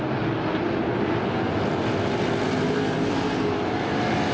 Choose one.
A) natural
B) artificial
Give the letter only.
A